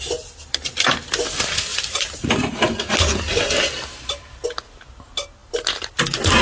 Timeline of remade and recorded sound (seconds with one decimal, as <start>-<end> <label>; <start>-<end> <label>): 0.0-1.7 recorded; 1.7-2.3 remade; 2.3-6.4 recorded